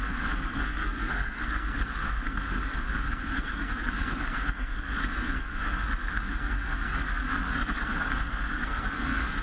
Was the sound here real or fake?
fake